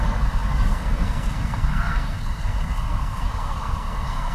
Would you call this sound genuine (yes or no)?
no